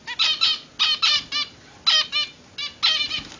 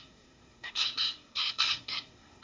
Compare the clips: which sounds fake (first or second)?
second